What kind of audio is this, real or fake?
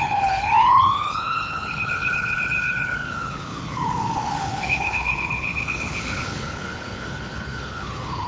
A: fake